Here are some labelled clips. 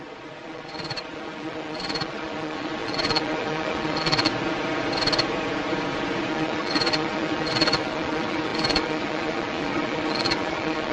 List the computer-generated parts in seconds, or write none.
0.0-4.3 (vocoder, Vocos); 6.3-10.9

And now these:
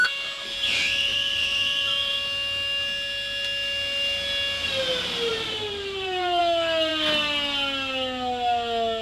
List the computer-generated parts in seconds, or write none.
1.1-2.1 (vocoder, BigVGAN v2); 5.3-6.4

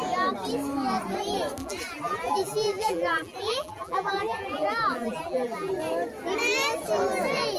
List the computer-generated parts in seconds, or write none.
1.6-5.7 (vocoder, BigVGAN v2)

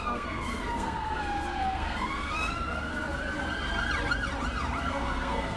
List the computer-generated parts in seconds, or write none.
0.0-2.9 (codec, SNAC); 4.8-5.6

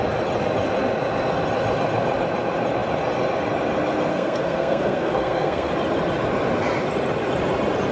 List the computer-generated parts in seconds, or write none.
4.1-5.7 (codec, SNAC)

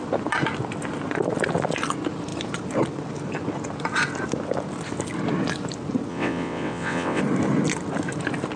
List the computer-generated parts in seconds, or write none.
6.1-7.2 (vocoder, WaveNeXt)

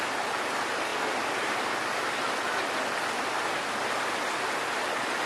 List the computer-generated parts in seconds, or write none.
none

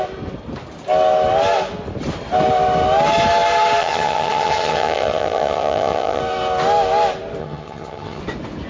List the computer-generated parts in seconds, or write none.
3.8-6.2 (vocoder, HiFi-GAN); 7.4-8.2